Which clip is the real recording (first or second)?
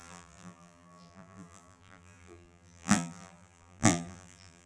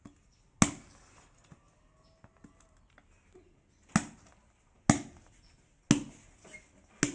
second